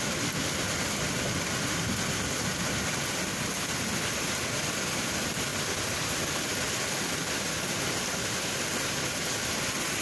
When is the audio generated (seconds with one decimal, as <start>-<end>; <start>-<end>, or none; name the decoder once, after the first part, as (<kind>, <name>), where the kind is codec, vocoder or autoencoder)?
none